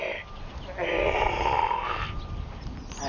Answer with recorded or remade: recorded